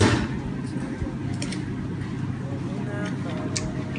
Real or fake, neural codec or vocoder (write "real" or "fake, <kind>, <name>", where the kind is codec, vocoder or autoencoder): real